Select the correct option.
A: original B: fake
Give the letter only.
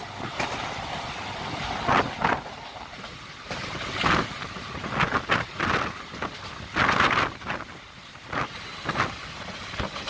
A